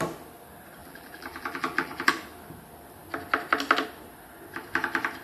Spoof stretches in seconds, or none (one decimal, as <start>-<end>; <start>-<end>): 0.8-2.1